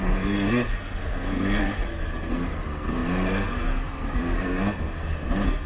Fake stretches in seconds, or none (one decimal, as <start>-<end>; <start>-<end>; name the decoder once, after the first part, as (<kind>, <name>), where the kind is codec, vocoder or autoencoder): 0.0-5.7 (codec, SNAC)